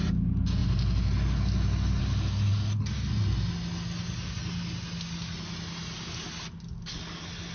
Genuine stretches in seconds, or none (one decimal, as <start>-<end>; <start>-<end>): 0.0-7.5